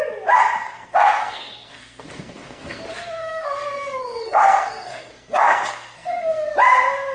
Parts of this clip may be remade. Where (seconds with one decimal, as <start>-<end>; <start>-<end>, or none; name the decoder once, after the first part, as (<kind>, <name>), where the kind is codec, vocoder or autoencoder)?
0.6-2.8 (codec, SNAC); 3.2-6.5